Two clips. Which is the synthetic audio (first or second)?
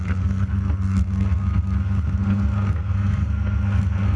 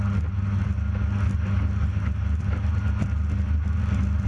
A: first